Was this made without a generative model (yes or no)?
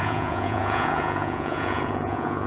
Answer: no